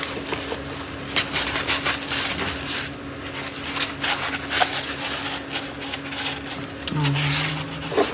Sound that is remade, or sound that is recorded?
recorded